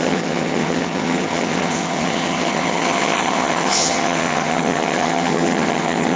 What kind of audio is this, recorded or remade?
remade